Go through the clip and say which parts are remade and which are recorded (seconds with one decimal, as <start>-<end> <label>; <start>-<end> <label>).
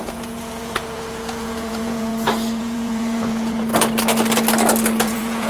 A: 0.0-2.1 remade; 2.1-2.6 recorded; 2.6-3.7 remade; 3.7-5.0 recorded; 5.0-5.5 remade